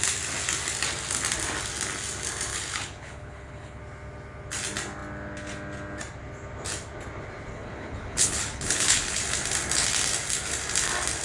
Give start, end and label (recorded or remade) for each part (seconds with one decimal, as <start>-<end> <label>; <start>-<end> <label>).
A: 0.0-2.5 recorded; 2.5-3.8 remade; 3.8-7.5 recorded; 7.5-9.2 remade; 9.2-11.2 recorded